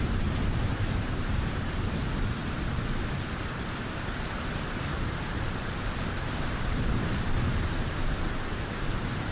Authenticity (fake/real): fake